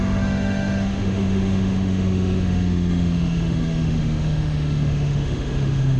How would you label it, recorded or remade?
remade